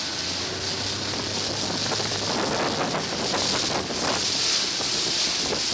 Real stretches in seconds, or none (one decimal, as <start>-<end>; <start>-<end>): 0.0-5.7